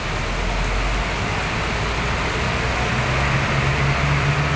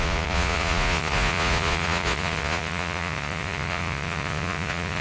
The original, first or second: first